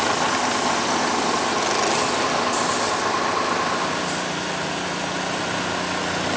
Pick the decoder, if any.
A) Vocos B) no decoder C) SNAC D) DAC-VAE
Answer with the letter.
B